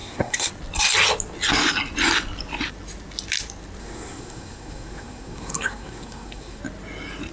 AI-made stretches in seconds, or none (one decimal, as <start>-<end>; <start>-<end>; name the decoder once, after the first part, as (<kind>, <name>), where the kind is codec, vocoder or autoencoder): 0.0-0.5 (codec, SNAC); 3.8-6.6